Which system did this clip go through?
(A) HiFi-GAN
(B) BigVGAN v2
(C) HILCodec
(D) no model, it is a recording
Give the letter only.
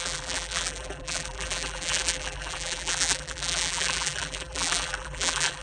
B